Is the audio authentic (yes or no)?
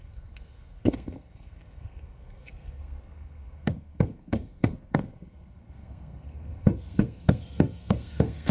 no